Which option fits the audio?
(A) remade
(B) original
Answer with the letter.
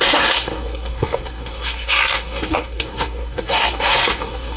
A